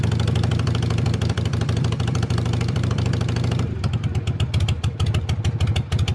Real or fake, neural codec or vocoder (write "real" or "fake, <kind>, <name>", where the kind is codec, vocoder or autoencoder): real